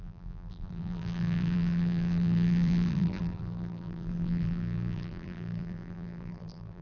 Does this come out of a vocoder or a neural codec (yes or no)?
yes